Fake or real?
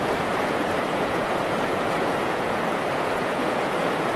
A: fake